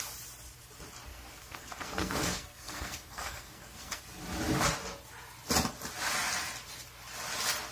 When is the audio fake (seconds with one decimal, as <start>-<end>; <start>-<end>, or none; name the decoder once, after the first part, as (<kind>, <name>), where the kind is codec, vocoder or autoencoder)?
1.1-4.0 (codec, SNAC)